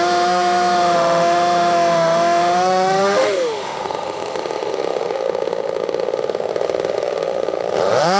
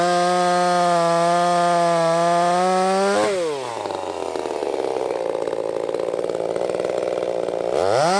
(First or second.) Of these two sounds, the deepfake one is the first